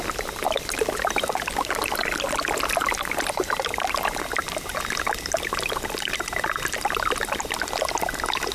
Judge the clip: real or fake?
real